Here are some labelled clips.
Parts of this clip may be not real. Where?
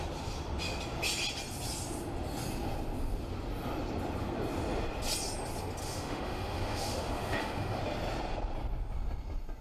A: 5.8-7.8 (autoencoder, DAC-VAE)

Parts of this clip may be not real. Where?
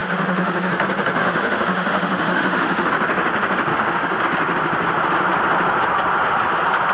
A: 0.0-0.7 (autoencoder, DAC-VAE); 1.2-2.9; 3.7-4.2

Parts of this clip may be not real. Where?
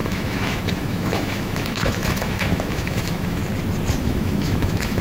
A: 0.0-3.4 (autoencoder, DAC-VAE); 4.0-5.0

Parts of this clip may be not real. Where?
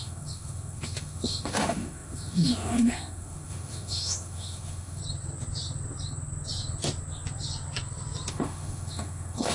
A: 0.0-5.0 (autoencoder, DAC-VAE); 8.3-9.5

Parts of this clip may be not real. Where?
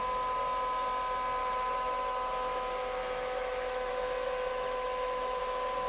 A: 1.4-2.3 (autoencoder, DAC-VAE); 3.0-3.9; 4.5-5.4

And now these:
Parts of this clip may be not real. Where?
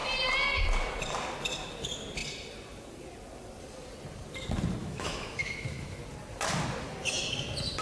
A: 4.8-6.0 (autoencoder, DAC-VAE)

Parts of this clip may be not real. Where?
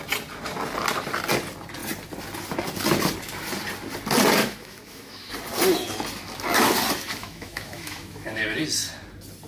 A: 4.4-5.3 (autoencoder, DAC-VAE); 7.2-8.6